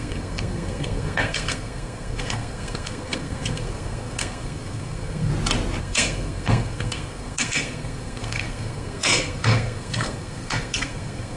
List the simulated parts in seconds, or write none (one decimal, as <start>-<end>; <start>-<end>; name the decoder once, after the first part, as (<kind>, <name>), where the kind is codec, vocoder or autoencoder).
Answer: 0.0-5.3 (codec, SNAC); 5.8-11.4